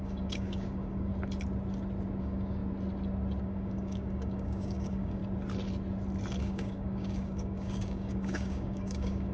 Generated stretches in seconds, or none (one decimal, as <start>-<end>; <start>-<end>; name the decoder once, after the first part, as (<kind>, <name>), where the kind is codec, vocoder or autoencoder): 0.0-1.1 (codec, DAC); 2.2-2.6; 3.4-5.2; 6.4-9.3